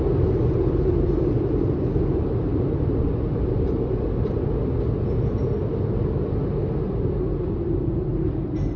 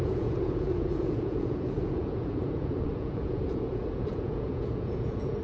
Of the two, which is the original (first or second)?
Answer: first